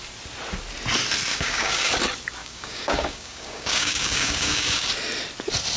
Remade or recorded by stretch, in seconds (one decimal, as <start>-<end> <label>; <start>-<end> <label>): 0.0-1.3 recorded; 1.3-1.9 remade; 1.9-2.4 recorded; 2.4-4.9 remade; 4.9-5.8 recorded